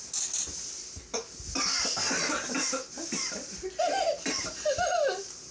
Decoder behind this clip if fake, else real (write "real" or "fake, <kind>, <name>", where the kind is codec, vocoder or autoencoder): real